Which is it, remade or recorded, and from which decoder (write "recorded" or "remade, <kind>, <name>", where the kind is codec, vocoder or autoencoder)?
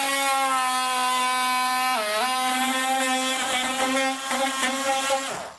recorded